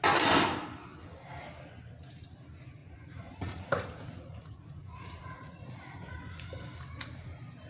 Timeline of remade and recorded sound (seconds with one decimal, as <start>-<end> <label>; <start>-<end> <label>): 0.0-2.8 recorded; 2.8-6.5 remade; 6.5-7.7 recorded

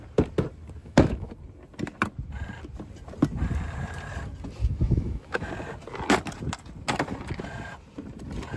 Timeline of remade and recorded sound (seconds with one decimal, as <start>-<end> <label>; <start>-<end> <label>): 0.0-0.8 recorded; 0.8-1.3 remade; 1.3-4.6 recorded; 4.6-5.5 remade; 5.5-8.6 recorded

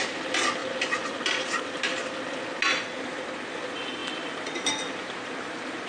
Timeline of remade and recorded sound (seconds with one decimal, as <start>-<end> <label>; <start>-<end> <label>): 0.0-5.9 recorded

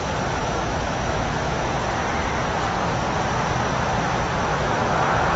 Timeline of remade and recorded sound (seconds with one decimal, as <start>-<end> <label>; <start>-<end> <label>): 0.0-0.4 recorded; 0.4-2.0 remade; 2.0-4.5 recorded; 4.5-5.4 remade